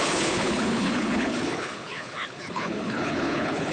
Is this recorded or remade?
remade